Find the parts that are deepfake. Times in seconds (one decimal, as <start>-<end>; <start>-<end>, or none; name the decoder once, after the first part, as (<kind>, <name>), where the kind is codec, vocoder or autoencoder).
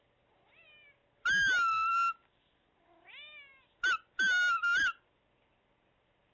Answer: none